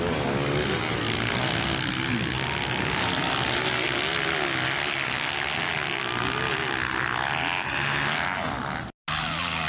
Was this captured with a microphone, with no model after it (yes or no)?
yes